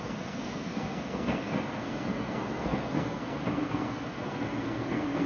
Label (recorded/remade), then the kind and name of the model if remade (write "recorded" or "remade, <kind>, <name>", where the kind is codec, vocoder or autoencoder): remade, codec, SNAC